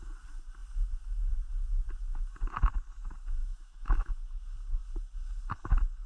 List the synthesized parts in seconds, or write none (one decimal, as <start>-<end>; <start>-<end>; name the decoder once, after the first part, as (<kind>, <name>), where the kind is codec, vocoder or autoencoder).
3.4-4.1 (autoencoder, DAC-VAE)